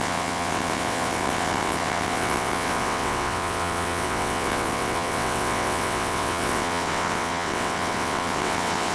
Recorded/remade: remade